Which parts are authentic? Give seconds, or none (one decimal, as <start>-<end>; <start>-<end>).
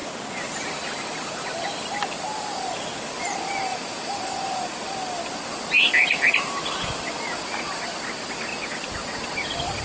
none